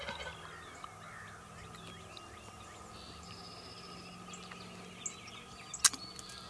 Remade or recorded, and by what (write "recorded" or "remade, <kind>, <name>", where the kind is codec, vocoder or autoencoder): recorded